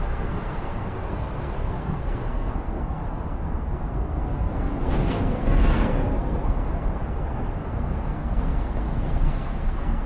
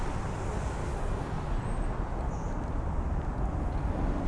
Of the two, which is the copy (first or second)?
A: first